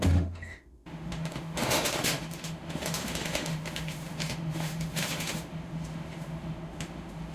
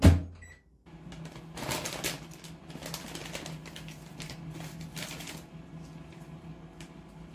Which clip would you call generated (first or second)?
first